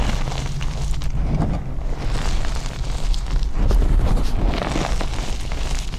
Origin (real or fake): real